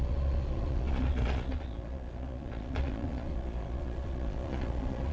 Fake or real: fake